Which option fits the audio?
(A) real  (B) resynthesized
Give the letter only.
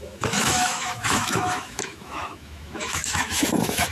B